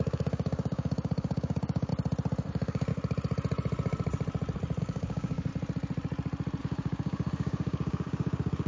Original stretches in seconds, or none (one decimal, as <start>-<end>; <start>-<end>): 1.9-2.5; 2.9-4.8; 5.5-6.6